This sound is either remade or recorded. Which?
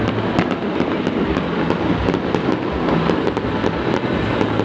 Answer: recorded